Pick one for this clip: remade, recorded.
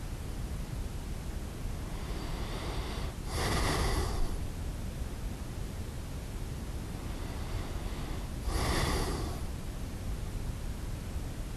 recorded